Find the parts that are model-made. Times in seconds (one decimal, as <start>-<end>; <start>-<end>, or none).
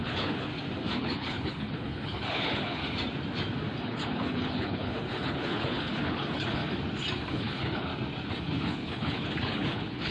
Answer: 0.0-0.5; 1.0-2.8; 3.8-6.6; 7.3-7.9; 8.4-10.1